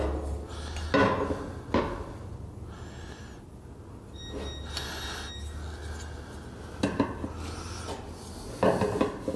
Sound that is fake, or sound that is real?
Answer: real